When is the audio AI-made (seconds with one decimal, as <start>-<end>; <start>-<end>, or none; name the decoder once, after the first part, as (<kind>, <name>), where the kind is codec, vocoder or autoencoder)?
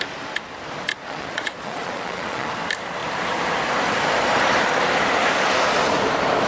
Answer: 1.0-2.5 (vocoder, Vocos)